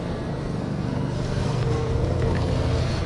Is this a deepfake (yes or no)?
yes